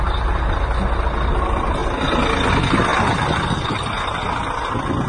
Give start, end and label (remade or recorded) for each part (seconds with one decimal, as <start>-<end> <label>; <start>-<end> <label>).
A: 0.0-5.1 recorded